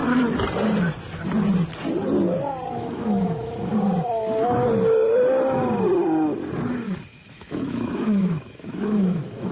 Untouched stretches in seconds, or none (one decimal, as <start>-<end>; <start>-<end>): 0.0-2.7; 3.7-7.1